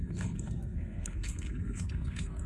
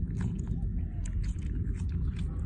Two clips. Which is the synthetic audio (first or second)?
first